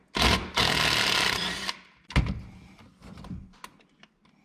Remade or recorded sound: recorded